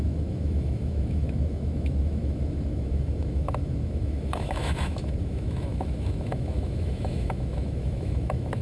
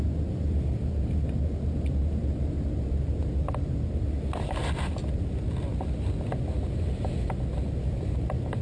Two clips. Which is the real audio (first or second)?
second